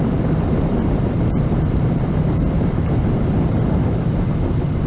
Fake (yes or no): yes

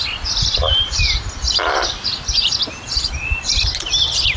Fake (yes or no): no